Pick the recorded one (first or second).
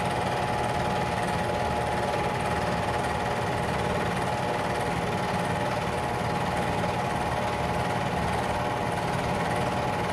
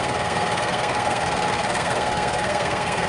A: first